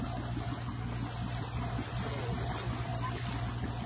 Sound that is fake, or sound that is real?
real